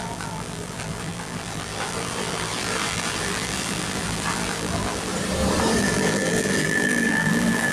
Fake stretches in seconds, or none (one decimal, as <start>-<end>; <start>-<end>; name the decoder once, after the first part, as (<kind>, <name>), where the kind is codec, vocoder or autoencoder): 0.0-5.1 (vocoder, BigVGAN v2); 5.8-7.7